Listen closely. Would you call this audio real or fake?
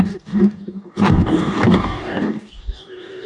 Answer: fake